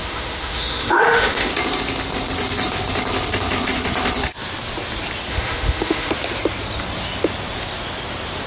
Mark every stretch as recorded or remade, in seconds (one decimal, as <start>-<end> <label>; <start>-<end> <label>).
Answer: 0.0-1.5 remade; 1.5-5.3 recorded; 5.3-6.1 remade; 6.1-8.5 recorded